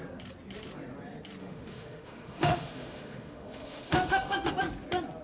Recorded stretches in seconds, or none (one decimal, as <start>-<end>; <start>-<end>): 0.0-1.4; 4.5-5.2